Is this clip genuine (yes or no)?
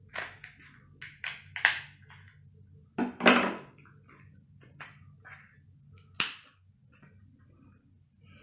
yes